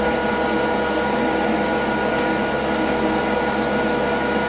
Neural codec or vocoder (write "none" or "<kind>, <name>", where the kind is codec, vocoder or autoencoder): none